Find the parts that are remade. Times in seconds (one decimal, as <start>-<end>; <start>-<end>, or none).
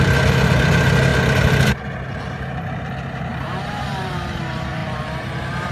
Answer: 3.3-4.1; 4.8-5.7